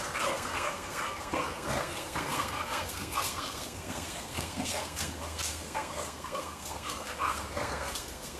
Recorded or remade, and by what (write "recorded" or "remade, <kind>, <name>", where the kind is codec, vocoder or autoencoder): remade, codec, SNAC